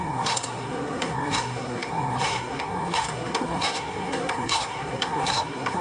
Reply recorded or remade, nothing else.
remade